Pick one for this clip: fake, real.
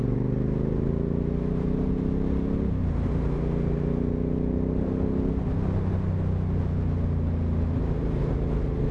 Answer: real